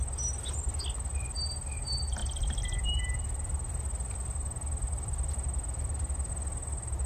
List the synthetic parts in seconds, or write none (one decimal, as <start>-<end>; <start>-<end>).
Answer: none